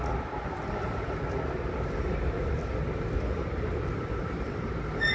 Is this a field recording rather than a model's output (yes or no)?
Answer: yes